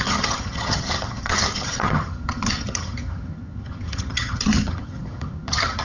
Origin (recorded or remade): remade